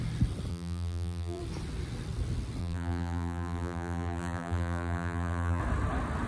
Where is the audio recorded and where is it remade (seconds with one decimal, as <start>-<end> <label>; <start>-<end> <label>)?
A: 0.0-0.5 recorded; 0.5-1.4 remade; 1.4-2.6 recorded; 2.6-5.6 remade; 5.6-6.3 recorded